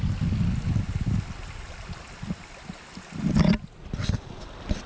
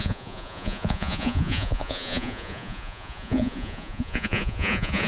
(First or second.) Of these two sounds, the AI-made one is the second